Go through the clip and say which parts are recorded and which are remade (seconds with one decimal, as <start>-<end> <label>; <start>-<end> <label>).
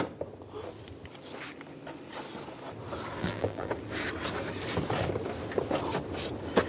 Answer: 0.0-3.2 recorded; 3.2-3.7 remade; 3.7-6.7 recorded